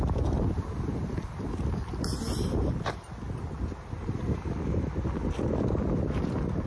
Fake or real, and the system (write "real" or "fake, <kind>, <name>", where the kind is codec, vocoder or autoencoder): real